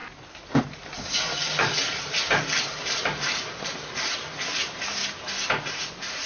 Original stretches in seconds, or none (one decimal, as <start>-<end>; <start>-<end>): 0.0-0.6; 5.0-5.8